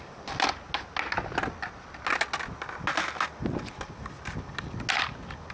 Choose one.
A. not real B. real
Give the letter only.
B